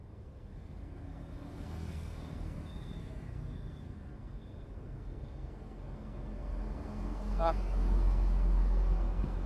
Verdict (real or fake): fake